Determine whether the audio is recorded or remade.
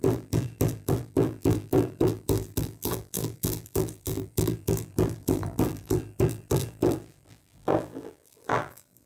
remade